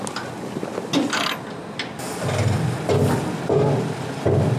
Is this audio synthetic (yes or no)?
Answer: no